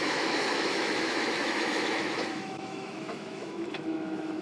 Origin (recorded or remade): remade